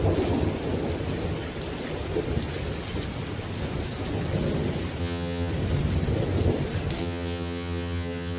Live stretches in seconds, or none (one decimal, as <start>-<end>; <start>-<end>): 0.0-5.0; 5.5-7.0